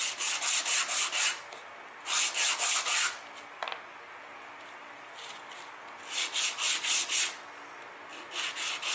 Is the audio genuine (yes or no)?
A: yes